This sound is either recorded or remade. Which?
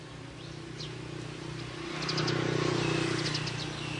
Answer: recorded